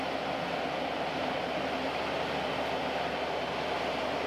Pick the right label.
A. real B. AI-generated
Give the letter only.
A